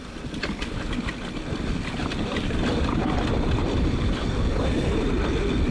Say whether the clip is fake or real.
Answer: fake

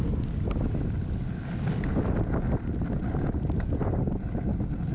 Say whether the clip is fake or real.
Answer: real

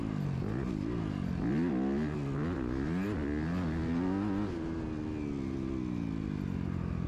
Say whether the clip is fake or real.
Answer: real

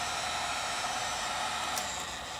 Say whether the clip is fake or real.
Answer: real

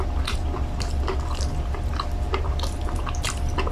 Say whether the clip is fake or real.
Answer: fake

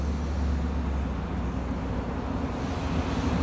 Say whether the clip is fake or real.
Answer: real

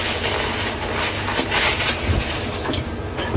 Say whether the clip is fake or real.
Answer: real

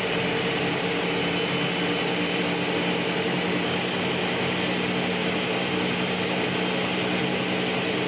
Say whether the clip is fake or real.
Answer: real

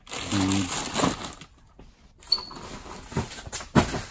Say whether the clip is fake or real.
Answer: real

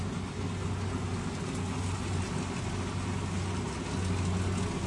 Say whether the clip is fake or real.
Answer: real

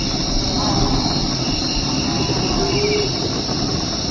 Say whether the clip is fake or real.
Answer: real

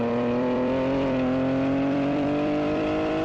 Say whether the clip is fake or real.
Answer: fake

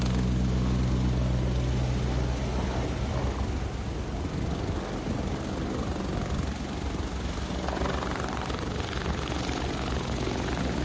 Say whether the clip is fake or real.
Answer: real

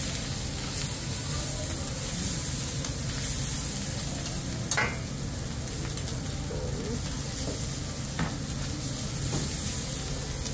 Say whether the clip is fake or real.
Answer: real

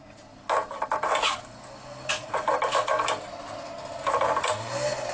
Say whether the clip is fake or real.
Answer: real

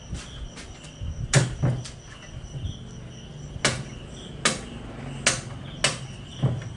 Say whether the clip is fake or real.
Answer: real